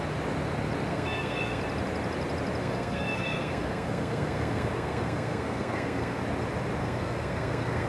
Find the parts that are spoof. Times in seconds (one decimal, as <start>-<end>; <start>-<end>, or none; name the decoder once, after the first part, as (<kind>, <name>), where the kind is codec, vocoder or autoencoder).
0.9-1.6 (codec, SNAC); 2.6-6.2; 6.8-7.9